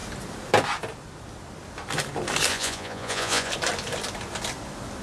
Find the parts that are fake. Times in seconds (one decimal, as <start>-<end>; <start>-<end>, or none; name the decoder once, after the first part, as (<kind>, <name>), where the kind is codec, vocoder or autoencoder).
2.5-3.5 (vocoder, Vocos)